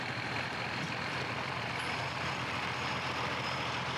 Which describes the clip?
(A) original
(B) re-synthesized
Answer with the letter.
A